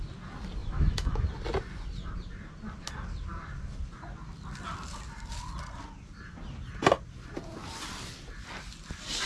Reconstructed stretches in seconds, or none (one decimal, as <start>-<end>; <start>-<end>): 0.6-1.3